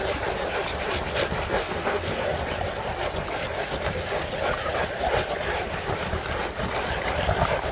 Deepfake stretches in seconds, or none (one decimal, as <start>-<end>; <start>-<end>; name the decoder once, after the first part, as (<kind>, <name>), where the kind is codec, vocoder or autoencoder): 1.6-2.2 (codec, SNAC)